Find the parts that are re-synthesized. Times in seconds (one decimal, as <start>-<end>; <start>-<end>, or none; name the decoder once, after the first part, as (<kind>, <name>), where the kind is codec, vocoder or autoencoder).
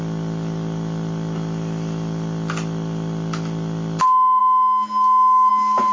none